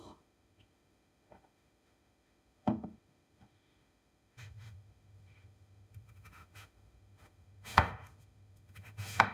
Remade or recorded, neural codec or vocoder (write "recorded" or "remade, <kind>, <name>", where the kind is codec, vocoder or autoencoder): remade, autoencoder, DAC-VAE